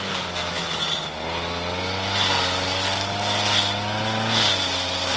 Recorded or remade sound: recorded